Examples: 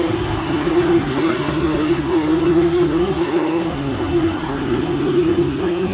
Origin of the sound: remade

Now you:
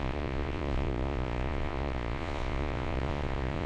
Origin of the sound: remade